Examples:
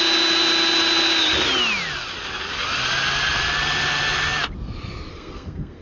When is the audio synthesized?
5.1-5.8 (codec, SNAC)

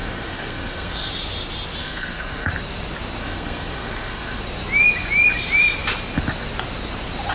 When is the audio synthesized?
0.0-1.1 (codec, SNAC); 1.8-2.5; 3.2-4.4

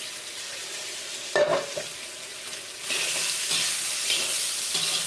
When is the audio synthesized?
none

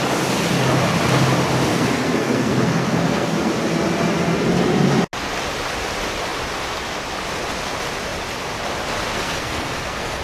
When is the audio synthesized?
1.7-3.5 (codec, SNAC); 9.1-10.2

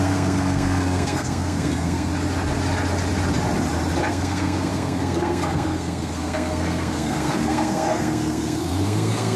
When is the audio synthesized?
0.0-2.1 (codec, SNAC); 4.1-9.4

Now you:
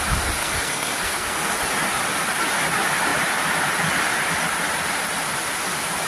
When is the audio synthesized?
0.4-1.5 (codec, SNAC)

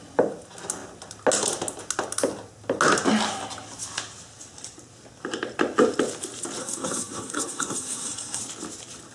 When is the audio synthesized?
6.6-8.4 (codec, SNAC)

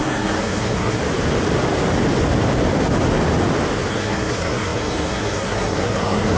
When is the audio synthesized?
0.0-1.0 (codec, SNAC); 3.9-6.4